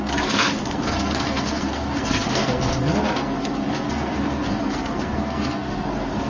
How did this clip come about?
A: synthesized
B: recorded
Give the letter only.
A